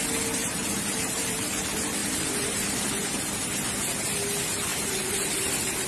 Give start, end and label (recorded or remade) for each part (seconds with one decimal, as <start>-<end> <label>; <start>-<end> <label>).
0.0-0.4 recorded; 0.4-1.5 remade; 1.5-2.0 recorded; 2.0-3.2 remade; 3.2-4.7 recorded; 4.7-5.5 remade; 5.5-5.9 recorded